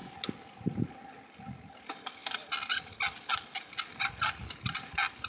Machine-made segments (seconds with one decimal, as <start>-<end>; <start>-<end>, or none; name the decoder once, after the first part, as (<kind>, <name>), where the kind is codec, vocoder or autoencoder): none